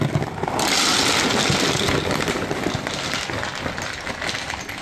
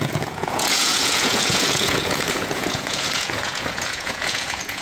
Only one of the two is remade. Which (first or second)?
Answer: second